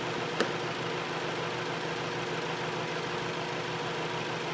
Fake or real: real